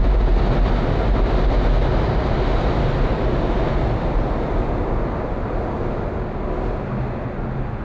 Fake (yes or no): no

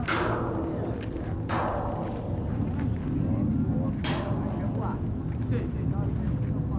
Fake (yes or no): no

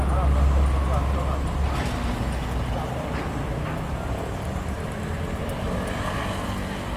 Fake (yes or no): no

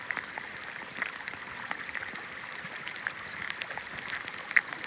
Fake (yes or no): no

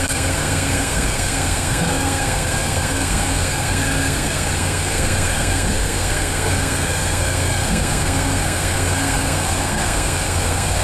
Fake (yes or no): yes